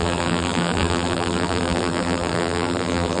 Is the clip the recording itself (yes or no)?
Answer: no